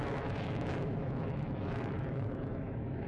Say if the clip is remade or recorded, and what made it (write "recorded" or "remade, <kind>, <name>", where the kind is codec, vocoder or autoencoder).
remade, autoencoder, DAC-VAE